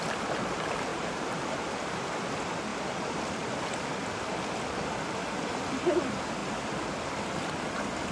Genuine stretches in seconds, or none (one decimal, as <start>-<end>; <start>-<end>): 0.0-0.9; 2.0-2.7; 3.2-8.1